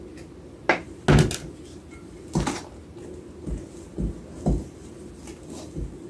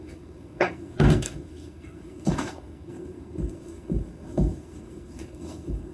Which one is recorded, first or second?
first